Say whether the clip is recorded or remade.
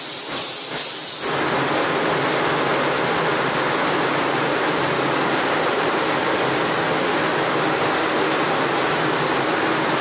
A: recorded